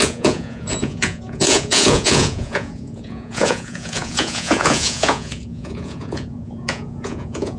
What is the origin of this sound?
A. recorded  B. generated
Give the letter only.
B